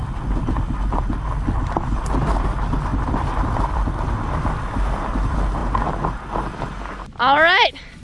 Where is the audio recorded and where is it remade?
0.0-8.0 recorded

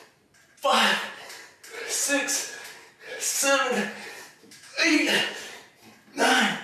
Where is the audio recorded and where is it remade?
0.0-4.4 recorded; 4.4-5.2 remade; 5.2-6.6 recorded

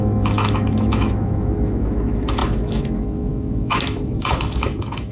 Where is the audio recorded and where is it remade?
0.0-5.1 remade